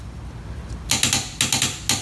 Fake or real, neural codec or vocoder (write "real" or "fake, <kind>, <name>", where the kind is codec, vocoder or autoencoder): real